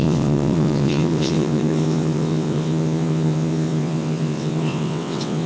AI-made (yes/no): yes